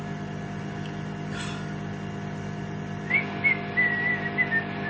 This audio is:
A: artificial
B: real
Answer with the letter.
B